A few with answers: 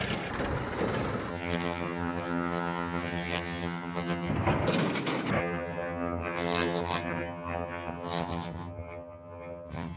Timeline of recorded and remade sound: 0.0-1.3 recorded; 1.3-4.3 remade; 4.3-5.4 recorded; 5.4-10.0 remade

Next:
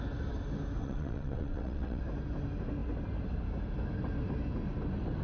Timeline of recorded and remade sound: 0.0-0.8 recorded; 0.8-2.0 remade; 2.0-5.2 recorded

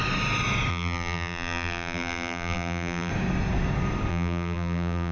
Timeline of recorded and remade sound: 0.0-0.7 recorded; 0.7-3.1 remade; 3.1-4.1 recorded; 4.1-5.1 remade

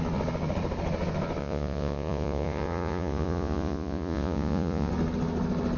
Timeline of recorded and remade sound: 0.0-1.4 recorded; 1.4-4.9 remade; 4.9-5.8 recorded

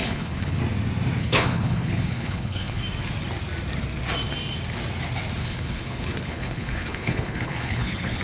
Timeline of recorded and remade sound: 0.0-0.6 remade; 0.6-1.2 recorded; 1.2-2.8 remade; 2.8-5.4 recorded; 5.4-8.2 remade